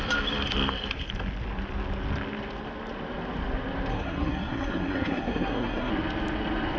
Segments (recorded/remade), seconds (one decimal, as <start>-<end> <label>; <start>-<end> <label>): 0.0-3.9 recorded; 3.9-5.9 remade; 5.9-6.8 recorded